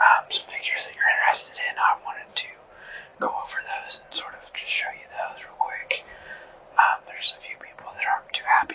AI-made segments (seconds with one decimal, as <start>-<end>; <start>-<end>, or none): 0.4-1.6